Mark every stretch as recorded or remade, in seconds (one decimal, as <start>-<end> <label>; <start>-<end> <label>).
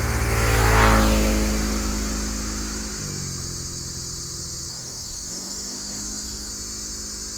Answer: 0.0-4.7 recorded; 4.7-6.5 remade; 6.5-7.4 recorded